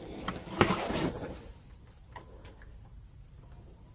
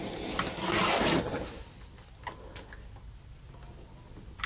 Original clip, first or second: second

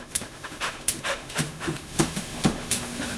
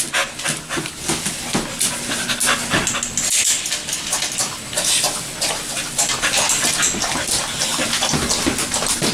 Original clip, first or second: second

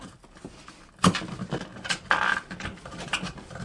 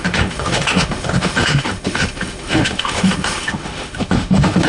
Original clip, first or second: first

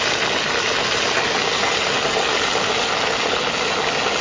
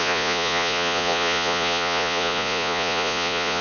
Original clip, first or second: first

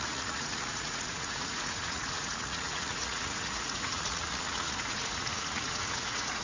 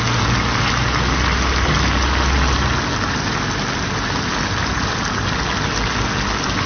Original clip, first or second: second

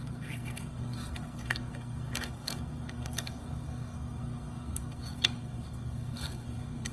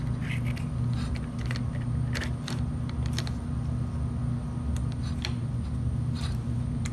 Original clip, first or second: second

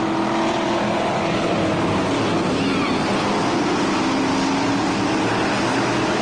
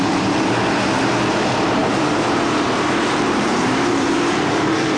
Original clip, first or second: first